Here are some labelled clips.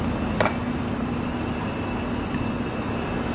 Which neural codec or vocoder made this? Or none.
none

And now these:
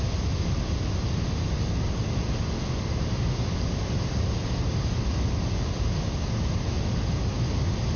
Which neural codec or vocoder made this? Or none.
none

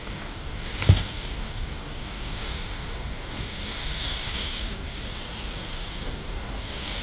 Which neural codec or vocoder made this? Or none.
codec, DAC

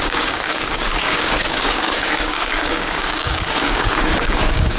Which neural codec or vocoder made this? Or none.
codec, DAC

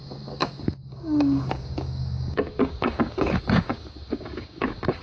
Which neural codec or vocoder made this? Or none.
codec, DAC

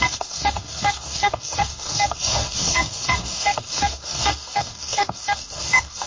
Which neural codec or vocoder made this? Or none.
codec, DAC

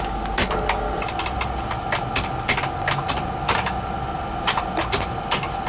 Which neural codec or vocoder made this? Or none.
none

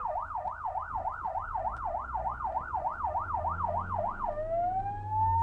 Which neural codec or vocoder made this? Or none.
none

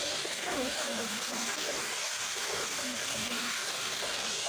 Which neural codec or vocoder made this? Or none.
codec, DAC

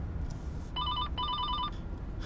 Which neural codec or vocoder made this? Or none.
none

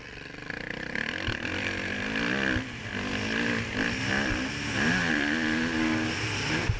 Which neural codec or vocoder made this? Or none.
none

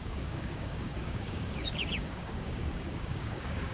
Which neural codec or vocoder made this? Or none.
codec, DAC